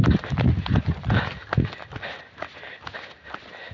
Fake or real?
real